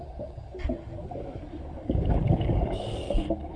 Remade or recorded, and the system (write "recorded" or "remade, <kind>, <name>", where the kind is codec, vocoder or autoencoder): remade, codec, DAC